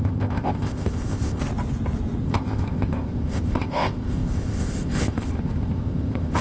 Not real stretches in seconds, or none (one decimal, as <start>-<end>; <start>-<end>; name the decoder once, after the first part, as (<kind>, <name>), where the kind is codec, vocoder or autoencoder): 0.0-1.4 (codec, ZipCodec); 2.2-6.4